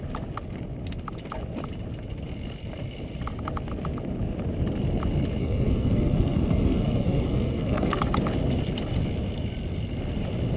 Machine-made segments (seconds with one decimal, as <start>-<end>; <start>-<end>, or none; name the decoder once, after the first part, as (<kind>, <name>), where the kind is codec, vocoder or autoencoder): 5.4-8.0 (codec, SNAC)